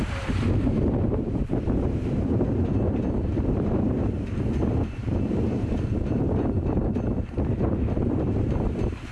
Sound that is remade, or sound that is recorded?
remade